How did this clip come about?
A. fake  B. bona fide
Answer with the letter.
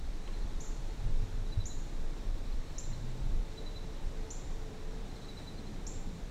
A